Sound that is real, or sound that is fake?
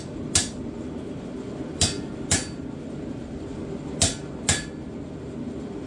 real